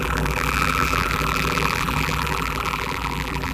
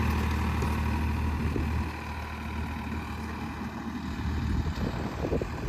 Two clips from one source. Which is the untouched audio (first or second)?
second